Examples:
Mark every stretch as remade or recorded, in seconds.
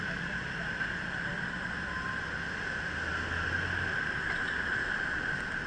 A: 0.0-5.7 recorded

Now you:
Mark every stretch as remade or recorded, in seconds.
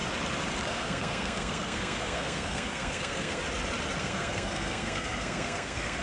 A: 0.0-0.7 recorded; 0.7-3.4 remade; 3.4-4.0 recorded; 4.0-6.0 remade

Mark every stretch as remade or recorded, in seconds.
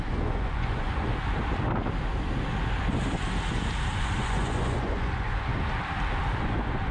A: 0.0-1.1 remade; 1.1-4.0 recorded; 4.0-5.5 remade; 5.5-6.4 recorded; 6.4-6.9 remade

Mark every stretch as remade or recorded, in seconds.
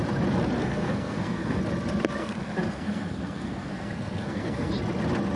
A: 0.0-0.6 recorded; 0.6-1.6 remade; 1.6-2.2 recorded; 2.2-4.7 remade; 4.7-5.4 recorded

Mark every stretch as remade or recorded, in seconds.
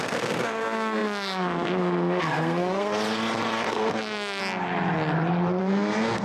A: 0.0-2.9 remade; 2.9-3.7 recorded; 3.7-4.4 remade; 4.4-5.6 recorded; 5.6-6.2 remade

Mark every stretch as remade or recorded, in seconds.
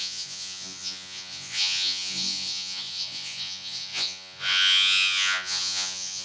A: 0.0-6.2 remade